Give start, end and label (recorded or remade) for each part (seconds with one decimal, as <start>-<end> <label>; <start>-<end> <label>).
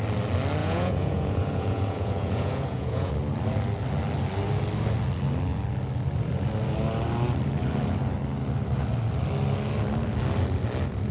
0.0-0.6 recorded; 0.6-3.1 remade; 3.1-11.1 recorded